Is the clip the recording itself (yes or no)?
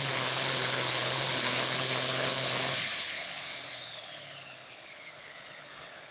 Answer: no